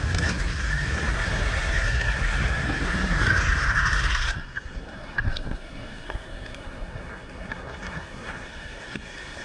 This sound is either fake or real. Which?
fake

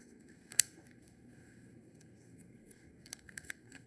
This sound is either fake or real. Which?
fake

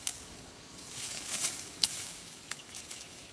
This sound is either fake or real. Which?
fake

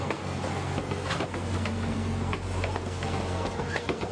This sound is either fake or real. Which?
fake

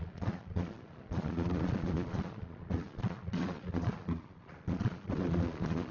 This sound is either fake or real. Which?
fake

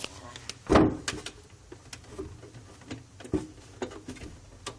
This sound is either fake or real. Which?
real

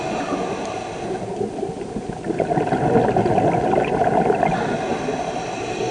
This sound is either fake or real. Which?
real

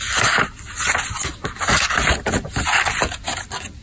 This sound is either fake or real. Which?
real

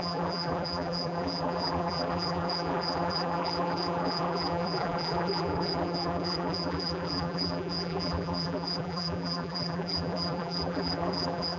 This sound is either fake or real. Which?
fake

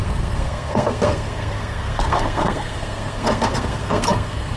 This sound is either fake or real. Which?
fake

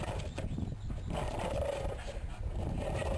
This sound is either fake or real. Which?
real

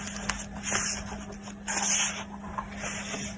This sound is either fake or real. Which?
real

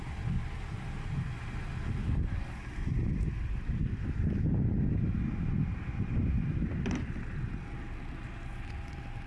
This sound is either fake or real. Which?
real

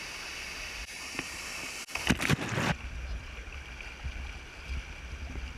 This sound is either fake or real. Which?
real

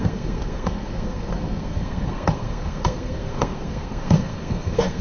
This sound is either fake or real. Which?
fake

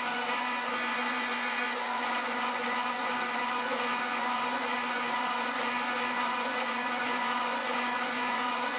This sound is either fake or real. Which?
fake